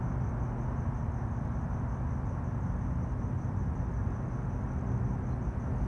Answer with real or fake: real